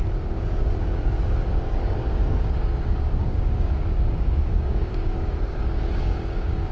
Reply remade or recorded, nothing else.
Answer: remade